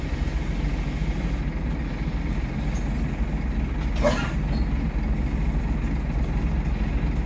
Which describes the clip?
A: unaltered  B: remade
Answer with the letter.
A